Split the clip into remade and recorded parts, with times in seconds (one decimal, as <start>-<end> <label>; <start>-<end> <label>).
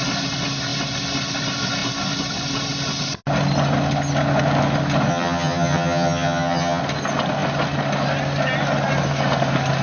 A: 0.0-5.1 recorded; 5.1-6.8 remade; 6.8-9.8 recorded